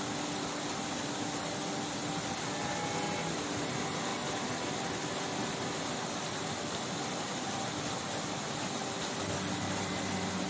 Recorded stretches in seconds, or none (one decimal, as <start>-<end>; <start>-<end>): 0.0-10.5